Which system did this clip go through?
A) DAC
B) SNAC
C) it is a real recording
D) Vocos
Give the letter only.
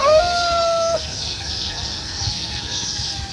B